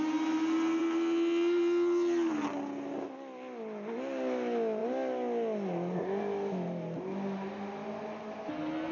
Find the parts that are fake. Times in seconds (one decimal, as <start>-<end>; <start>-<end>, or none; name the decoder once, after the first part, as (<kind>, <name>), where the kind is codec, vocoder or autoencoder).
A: none